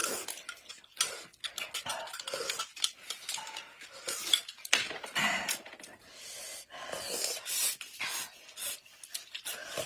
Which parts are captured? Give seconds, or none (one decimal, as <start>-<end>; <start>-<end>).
0.0-9.9